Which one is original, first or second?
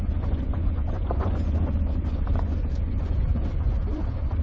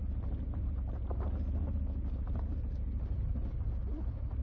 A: second